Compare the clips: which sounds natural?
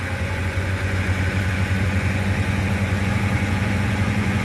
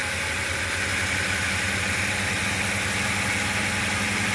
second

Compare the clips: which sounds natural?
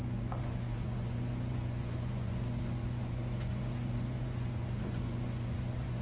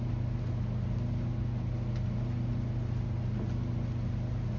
second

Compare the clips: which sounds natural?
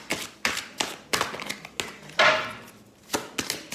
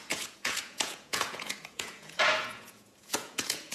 first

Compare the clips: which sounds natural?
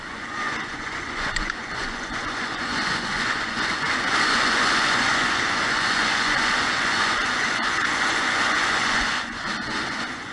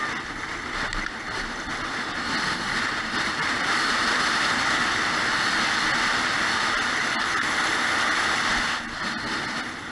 second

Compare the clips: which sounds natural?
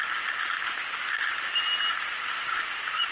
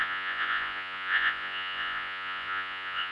first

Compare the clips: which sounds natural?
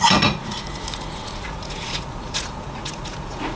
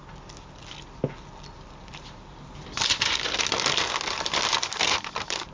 second